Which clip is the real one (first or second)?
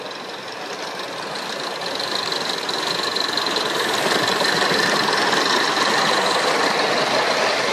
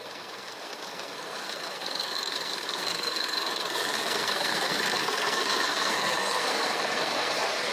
first